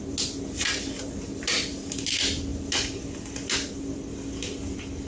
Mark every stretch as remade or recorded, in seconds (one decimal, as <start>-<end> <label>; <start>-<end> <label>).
0.0-5.1 recorded